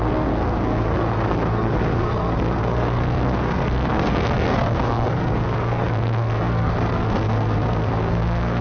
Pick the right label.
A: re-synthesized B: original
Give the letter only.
A